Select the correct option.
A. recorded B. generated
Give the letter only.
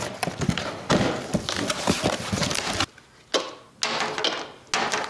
A